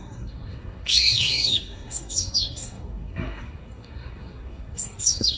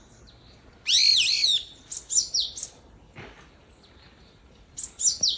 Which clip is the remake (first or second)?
first